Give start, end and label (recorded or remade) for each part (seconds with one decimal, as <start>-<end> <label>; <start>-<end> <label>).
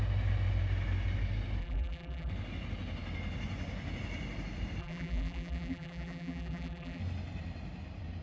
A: 0.0-1.6 recorded; 1.6-2.3 remade; 2.3-4.8 recorded; 4.8-7.0 remade; 7.0-8.2 recorded